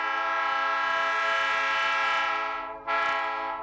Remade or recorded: recorded